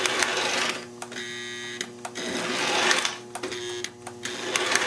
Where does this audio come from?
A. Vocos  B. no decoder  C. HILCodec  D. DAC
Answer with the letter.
B